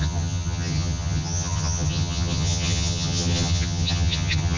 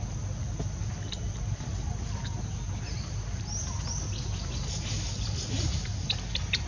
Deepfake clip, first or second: first